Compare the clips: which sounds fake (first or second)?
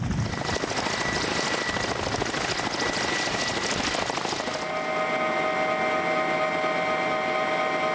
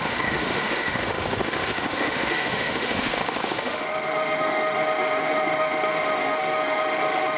second